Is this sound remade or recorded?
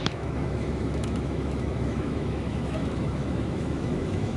remade